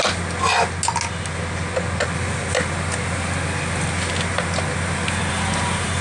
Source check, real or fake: real